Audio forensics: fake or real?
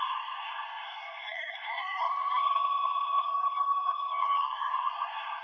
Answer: fake